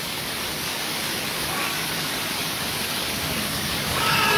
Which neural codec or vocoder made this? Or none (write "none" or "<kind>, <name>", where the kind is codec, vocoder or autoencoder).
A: codec, DAC